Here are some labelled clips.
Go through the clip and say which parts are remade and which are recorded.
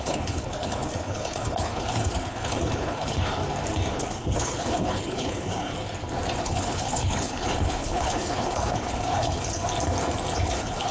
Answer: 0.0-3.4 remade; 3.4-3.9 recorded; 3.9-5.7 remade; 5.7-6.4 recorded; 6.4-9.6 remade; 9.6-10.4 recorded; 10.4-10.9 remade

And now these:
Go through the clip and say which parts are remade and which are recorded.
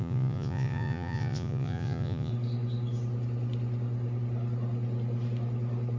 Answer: 0.0-2.3 remade; 2.3-6.0 recorded